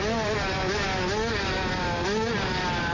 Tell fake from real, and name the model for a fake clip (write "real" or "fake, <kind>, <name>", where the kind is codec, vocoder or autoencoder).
real